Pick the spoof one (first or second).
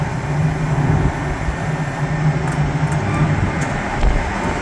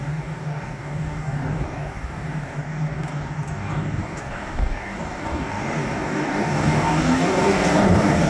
second